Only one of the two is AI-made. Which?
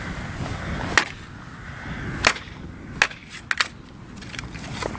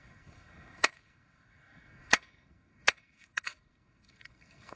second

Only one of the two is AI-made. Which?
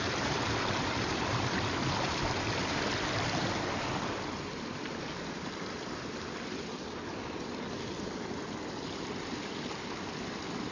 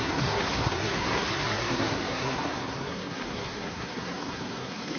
second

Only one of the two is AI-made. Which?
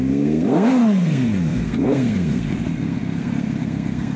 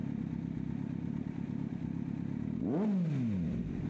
first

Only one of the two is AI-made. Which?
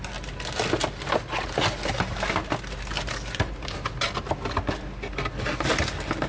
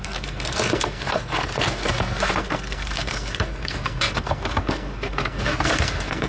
second